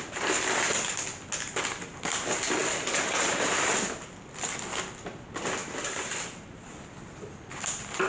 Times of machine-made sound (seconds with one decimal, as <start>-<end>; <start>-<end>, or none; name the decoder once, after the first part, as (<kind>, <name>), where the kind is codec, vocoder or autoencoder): 2.6-3.7 (vocoder, BigVGAN v2); 5.6-6.7